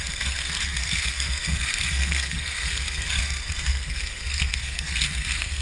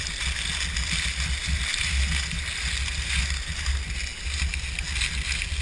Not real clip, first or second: first